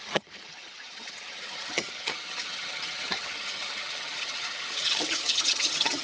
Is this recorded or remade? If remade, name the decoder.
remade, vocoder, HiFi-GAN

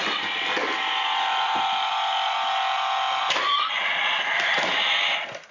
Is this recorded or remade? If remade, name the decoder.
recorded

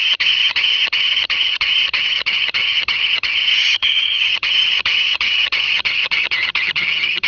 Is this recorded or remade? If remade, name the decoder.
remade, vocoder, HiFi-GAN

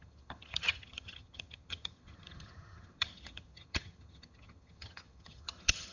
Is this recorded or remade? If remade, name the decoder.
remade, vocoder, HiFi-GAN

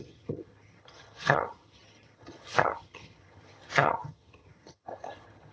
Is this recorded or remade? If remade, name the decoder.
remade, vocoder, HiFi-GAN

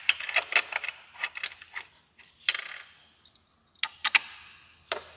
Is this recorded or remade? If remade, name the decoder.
recorded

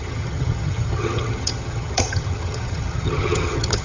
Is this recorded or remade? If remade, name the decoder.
remade, vocoder, HiFi-GAN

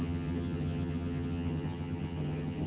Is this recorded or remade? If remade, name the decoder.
remade, vocoder, HiFi-GAN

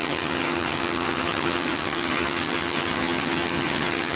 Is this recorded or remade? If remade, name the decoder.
remade, vocoder, HiFi-GAN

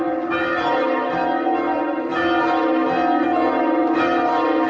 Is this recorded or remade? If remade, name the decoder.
recorded